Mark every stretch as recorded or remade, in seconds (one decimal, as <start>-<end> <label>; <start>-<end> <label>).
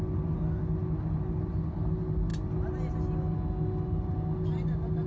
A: 0.0-5.1 recorded